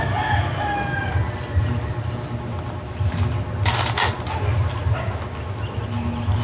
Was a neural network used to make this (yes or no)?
no